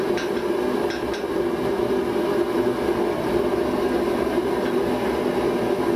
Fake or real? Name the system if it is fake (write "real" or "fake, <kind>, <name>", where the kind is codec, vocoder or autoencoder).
real